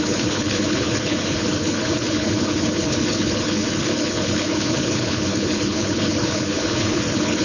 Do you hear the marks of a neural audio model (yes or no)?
yes